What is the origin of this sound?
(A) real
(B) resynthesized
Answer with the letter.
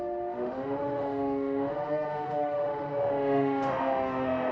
B